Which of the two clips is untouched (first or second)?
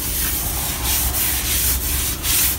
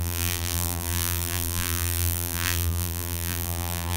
first